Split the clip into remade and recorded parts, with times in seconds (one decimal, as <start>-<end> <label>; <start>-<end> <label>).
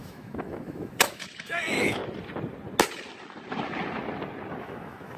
0.0-2.0 remade; 2.0-4.6 recorded; 4.6-5.2 remade